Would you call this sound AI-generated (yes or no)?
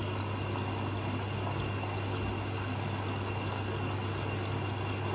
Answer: no